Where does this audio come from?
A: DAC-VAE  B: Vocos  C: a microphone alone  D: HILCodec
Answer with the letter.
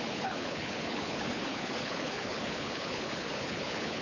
D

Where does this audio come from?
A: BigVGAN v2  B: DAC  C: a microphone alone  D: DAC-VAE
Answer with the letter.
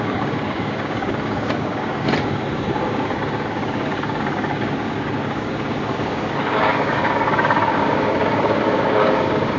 B